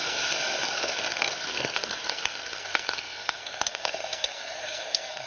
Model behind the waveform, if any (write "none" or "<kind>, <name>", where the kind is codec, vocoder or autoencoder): codec, SNAC